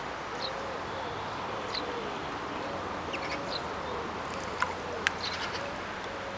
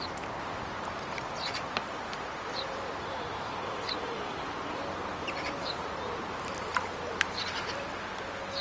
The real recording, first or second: first